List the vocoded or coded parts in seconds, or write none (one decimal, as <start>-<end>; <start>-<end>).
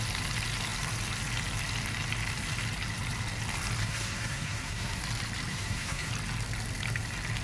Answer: 3.8-5.0; 5.5-6.1